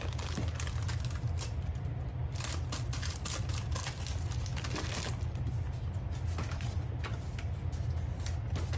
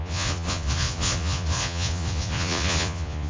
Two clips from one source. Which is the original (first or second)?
first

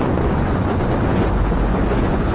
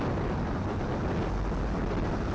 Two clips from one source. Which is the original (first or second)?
second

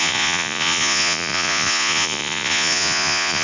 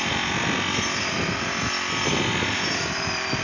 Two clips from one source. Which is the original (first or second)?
second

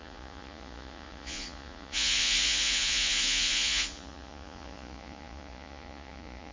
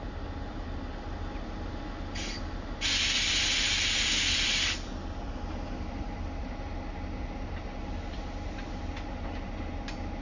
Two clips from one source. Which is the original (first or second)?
second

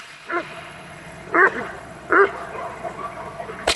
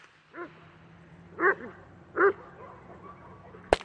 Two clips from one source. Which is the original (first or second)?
second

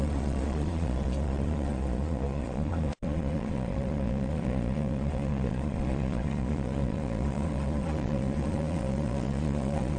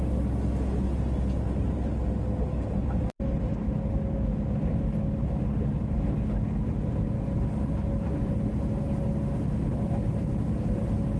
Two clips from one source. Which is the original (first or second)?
second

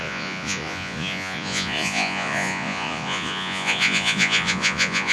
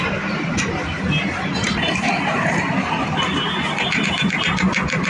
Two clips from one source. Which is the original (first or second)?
second